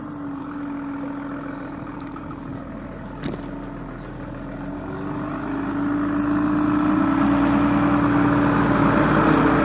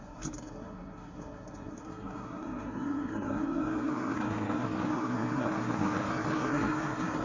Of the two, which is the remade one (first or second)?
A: second